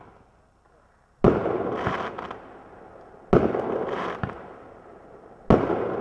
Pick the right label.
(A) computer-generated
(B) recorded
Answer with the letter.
B